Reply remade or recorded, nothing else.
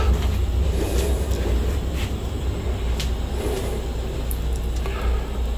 recorded